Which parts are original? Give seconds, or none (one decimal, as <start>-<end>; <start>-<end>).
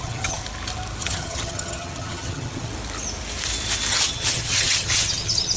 0.4-1.0; 2.7-3.9